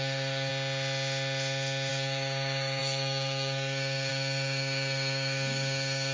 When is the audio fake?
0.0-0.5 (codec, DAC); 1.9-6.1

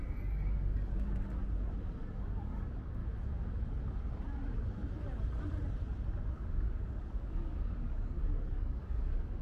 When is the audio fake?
0.0-1.4 (codec, DAC); 2.1-3.0; 6.3-9.4

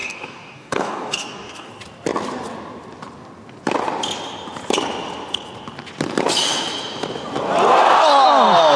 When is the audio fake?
0.0-1.7 (codec, DAC)

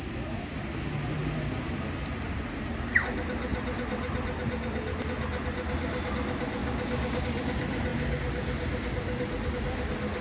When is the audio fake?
6.6-7.2 (codec, DAC)

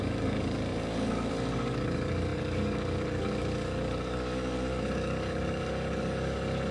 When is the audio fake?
0.0-6.7 (codec, DAC)

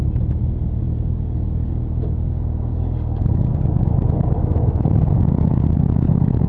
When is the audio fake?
0.8-6.5 (codec, DAC)

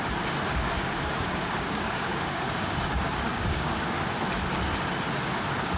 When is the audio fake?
0.5-4.0 (codec, DAC)

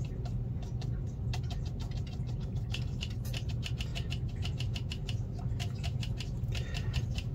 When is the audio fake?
2.4-3.1 (codec, DAC)